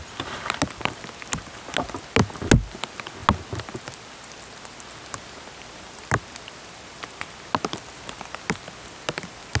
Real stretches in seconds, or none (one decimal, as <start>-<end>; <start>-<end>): 0.0-9.6

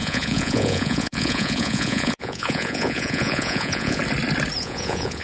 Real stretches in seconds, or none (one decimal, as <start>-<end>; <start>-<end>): 4.0-4.6

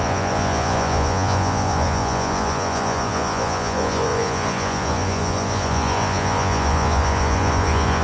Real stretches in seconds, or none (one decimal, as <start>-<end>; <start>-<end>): none

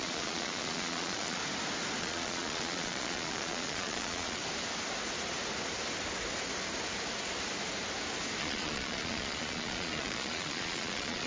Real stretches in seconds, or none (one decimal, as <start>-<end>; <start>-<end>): 1.4-2.0; 4.4-8.4

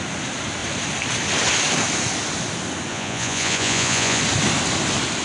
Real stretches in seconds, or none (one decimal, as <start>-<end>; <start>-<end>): 0.0-2.9; 4.2-5.2

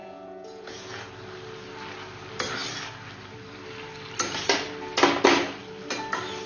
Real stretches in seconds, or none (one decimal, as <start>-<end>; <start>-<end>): 1.1-6.5